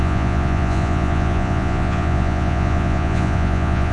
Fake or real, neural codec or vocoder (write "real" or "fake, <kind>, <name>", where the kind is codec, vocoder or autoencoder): fake, vocoder, Vocos